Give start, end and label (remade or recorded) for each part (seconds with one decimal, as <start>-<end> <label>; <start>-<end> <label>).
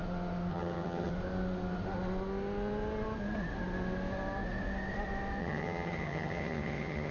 0.0-0.5 recorded; 0.5-1.1 remade; 1.1-5.4 recorded; 5.4-7.1 remade